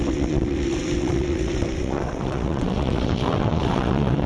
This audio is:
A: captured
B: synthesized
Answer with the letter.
B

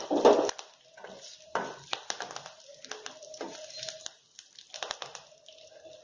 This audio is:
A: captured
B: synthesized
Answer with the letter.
A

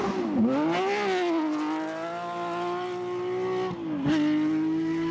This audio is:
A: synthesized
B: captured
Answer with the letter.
B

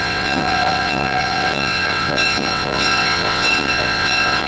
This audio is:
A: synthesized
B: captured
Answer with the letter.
A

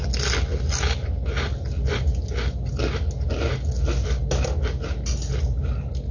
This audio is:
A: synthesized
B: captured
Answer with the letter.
B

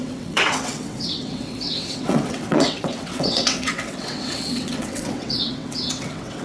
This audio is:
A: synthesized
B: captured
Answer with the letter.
A